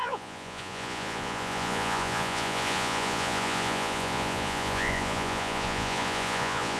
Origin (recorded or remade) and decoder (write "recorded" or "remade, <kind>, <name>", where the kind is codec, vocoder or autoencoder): remade, vocoder, Vocos